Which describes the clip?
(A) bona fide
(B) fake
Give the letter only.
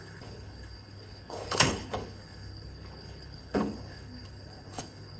B